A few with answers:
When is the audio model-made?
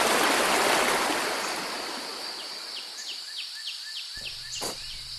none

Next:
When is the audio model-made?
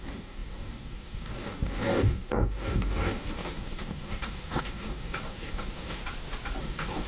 0.0-6.0 (codec, DAC); 6.6-7.1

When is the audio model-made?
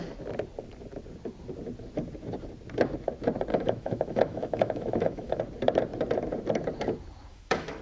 3.5-5.4 (autoencoder, DAC-VAE); 7.3-7.8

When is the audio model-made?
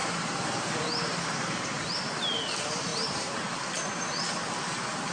0.0-1.9 (vocoder, BigVGAN v2); 2.9-3.4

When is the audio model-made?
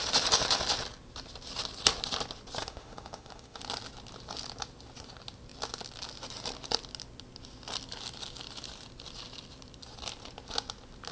2.6-3.6 (autoencoder, DAC-VAE)